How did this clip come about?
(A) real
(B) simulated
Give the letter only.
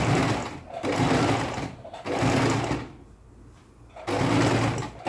A